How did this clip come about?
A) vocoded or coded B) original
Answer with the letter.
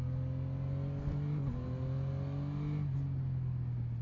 B